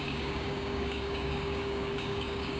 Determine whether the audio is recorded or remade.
remade